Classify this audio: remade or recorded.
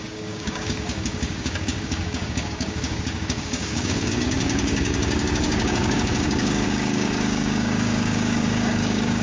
remade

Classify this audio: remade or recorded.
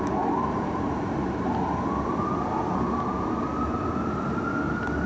recorded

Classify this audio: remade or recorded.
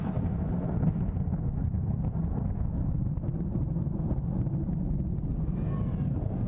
recorded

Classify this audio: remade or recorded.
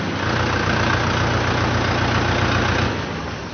recorded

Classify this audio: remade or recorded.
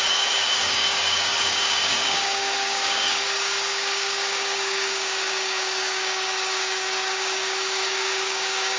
remade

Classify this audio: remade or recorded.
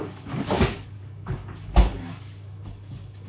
remade